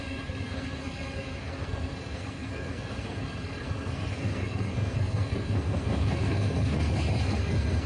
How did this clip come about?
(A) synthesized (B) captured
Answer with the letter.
A